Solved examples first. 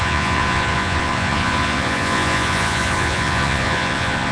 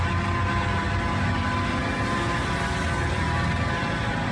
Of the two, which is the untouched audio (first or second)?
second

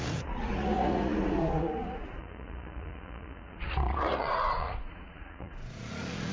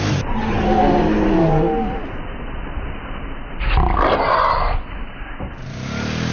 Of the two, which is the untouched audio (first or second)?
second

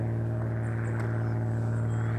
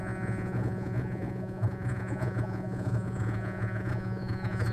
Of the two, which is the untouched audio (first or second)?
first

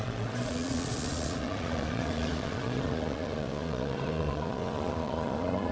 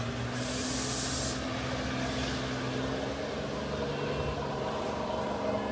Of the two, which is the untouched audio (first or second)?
second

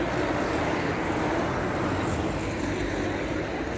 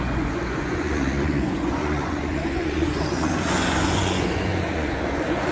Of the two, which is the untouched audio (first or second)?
first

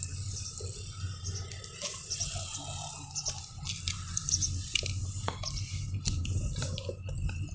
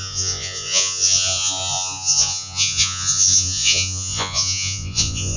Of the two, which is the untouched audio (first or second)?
first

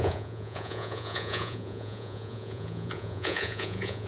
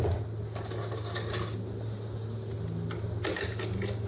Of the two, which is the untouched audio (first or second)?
second